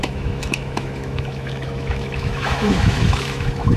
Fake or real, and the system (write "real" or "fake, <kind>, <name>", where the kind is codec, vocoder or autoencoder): fake, autoencoder, DAC-VAE